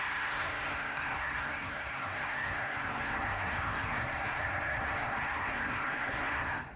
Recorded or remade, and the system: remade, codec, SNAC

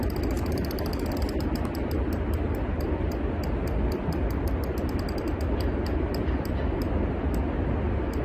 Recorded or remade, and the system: recorded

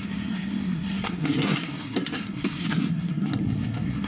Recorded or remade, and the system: remade, codec, SNAC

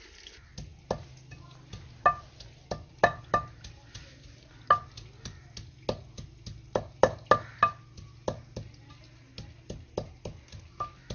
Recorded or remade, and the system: recorded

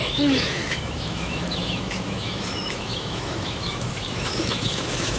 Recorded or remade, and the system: remade, autoencoder, DAC-VAE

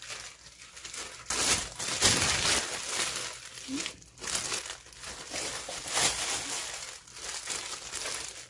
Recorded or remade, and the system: recorded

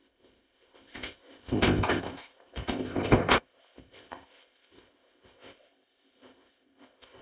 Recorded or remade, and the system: remade, codec, ZipCodec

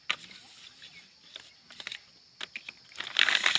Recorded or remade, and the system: recorded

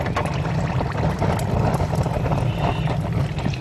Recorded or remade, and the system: recorded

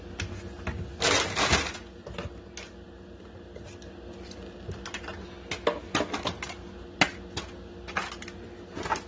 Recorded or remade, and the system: recorded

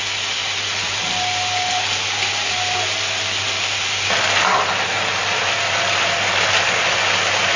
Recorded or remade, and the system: recorded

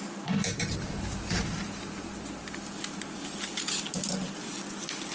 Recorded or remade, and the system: recorded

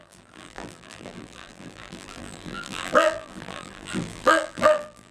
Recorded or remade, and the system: remade, vocoder, BigVGAN v2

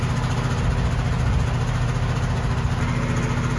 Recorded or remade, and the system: recorded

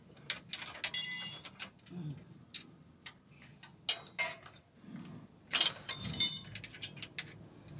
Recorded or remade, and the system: recorded